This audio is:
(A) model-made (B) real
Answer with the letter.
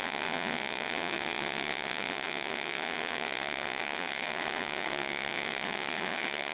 A